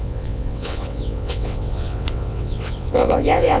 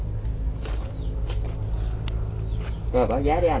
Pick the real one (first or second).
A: second